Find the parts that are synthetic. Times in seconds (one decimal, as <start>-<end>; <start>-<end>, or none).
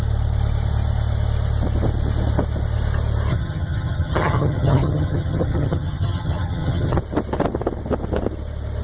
3.3-7.0